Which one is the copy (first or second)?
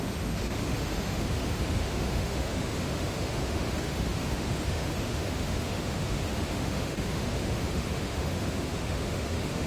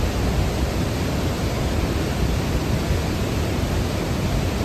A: first